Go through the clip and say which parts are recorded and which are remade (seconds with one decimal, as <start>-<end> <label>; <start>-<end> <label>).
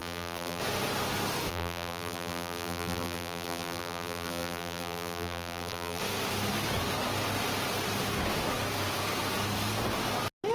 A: 0.0-0.6 remade; 0.6-1.5 recorded; 1.5-6.0 remade; 6.0-10.5 recorded